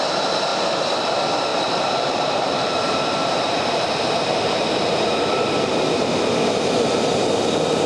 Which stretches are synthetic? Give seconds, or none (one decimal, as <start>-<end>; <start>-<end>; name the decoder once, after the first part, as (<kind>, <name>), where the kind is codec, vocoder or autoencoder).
0.5-1.1 (vocoder, BigVGAN v2); 1.5-5.5